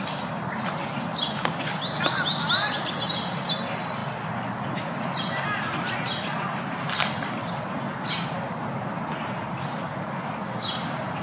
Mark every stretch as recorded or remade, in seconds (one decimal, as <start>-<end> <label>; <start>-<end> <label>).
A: 0.0-11.2 recorded